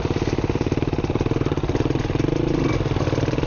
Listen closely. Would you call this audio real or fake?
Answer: real